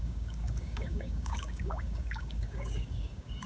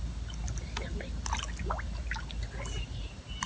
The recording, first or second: second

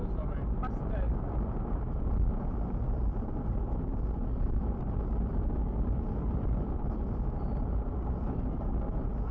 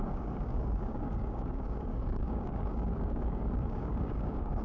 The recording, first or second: first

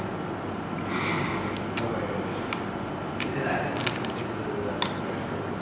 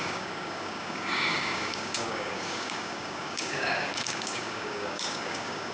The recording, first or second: first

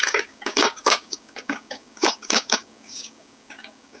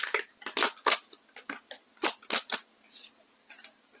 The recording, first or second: second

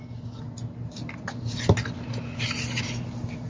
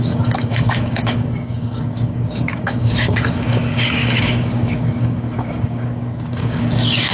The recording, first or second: first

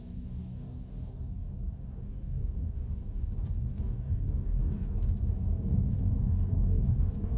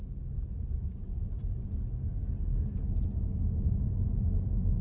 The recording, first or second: second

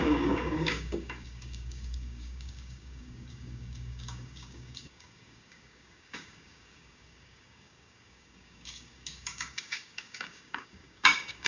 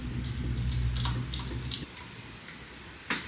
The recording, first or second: second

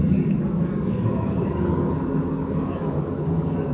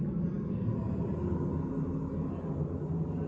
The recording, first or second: second